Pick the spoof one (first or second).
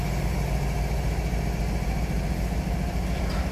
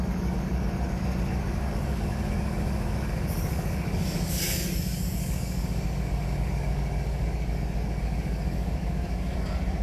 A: second